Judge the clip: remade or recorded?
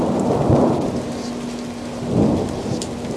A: recorded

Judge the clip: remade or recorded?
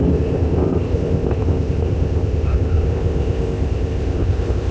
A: remade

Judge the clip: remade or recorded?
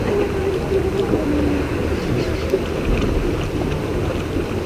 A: recorded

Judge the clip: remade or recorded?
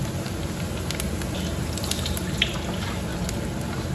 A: recorded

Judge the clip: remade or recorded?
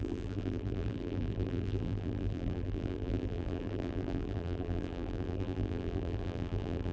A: remade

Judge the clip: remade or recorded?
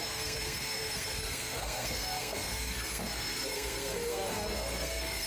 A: remade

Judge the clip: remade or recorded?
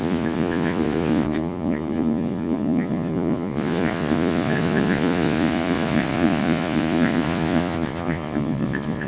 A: remade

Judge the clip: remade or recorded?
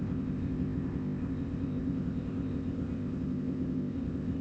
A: remade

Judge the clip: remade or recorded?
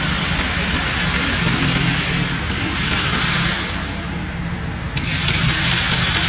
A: recorded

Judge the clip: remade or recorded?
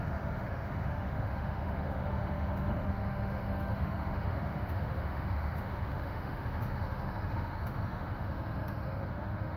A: remade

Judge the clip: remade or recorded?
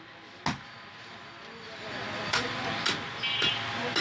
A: recorded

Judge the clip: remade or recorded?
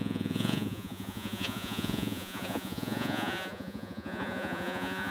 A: remade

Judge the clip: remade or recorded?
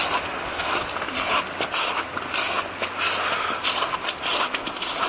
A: recorded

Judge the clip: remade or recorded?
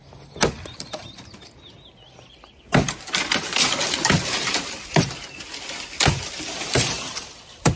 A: recorded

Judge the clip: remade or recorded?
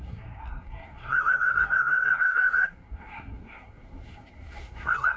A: remade